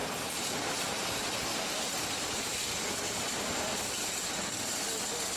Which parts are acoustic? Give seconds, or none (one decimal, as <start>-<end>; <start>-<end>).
0.0-1.5; 4.7-5.4